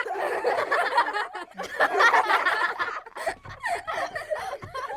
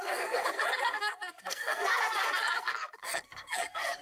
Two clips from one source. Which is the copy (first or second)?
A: second